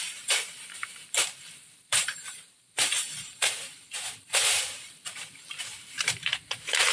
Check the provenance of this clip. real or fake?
fake